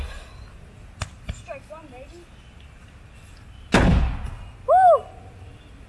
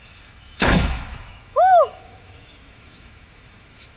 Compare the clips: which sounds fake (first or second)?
second